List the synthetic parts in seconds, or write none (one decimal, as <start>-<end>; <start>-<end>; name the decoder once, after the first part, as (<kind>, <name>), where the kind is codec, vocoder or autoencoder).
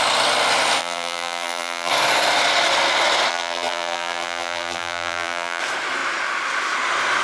0.8-1.9 (vocoder, BigVGAN v2); 3.3-5.6